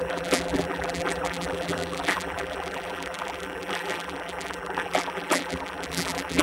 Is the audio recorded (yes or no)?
no